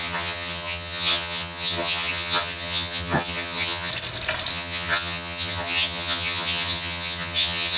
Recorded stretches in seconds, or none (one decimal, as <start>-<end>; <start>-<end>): 3.9-4.5